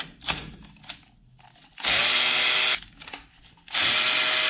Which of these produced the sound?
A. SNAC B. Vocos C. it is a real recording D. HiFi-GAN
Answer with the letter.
C